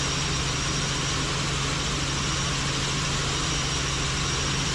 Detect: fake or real real